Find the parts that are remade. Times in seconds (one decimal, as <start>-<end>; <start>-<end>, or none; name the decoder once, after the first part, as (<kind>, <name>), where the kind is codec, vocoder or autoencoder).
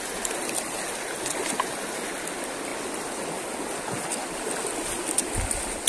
none